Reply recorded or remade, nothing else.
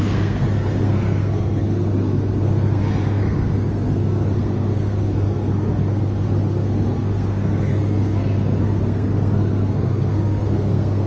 remade